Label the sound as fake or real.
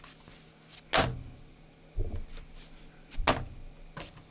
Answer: real